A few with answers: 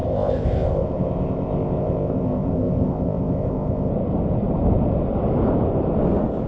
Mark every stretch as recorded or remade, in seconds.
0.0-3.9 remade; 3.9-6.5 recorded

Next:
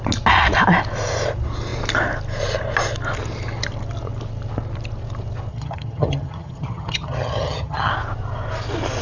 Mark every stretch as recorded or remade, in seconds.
0.0-5.5 recorded; 5.5-7.9 remade; 7.9-9.0 recorded

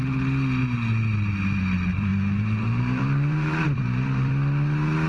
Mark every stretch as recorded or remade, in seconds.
0.0-0.6 recorded; 0.6-1.6 remade; 1.6-2.1 recorded; 2.1-4.3 remade; 4.3-5.1 recorded

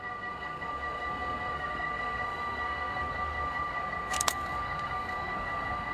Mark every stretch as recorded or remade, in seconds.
0.0-5.9 remade